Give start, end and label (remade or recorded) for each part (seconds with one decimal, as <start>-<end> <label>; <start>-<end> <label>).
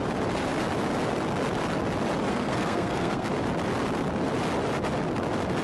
0.0-2.3 recorded; 2.3-3.3 remade; 3.3-5.6 recorded